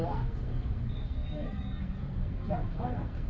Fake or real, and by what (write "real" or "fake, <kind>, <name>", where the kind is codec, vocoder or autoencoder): fake, codec, SNAC